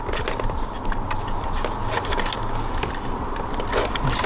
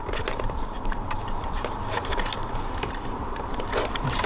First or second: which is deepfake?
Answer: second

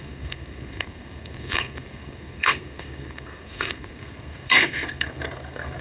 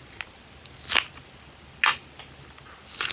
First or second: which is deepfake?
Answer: first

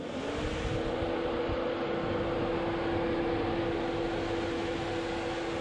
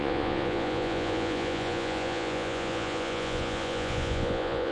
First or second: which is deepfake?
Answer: second